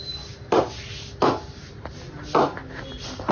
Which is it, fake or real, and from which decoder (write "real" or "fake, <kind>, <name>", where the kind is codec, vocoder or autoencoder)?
real